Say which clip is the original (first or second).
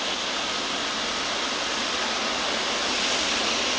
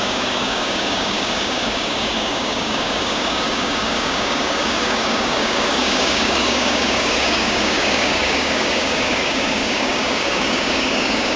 first